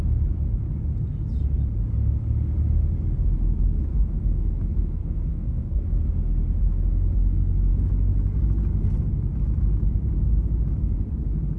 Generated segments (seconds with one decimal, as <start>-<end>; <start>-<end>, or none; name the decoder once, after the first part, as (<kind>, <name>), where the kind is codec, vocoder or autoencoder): 3.9-4.6 (codec, SNAC); 5.0-5.8